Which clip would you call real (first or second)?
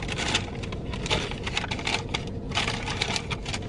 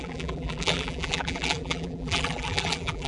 first